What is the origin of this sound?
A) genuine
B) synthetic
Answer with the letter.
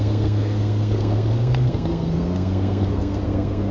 B